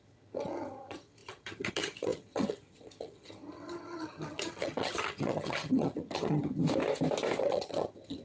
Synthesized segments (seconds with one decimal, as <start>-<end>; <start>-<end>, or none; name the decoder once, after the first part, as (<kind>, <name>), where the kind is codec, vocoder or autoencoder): 0.0-6.6 (vocoder, HiFi-GAN); 7.4-8.2